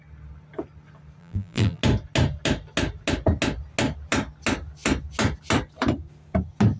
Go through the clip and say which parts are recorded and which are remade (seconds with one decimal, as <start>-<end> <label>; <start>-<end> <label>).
0.0-1.2 recorded; 1.2-1.8 remade; 1.8-6.8 recorded